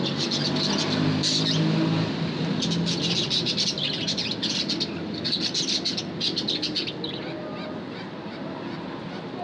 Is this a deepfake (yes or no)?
no